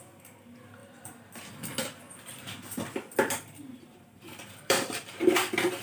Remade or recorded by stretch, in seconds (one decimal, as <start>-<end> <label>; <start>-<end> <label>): 0.0-0.8 recorded; 0.8-1.5 remade; 1.5-2.3 recorded; 2.3-5.2 remade; 5.2-5.8 recorded